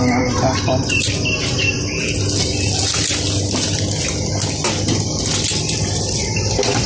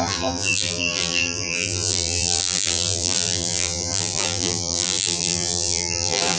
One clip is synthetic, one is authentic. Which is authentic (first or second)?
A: first